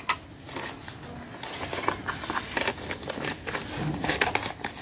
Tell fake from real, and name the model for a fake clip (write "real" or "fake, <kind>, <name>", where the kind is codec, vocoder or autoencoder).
real